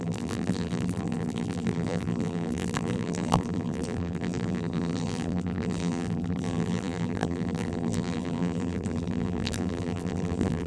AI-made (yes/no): yes